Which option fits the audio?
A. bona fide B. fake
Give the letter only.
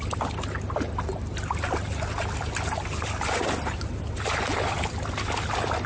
A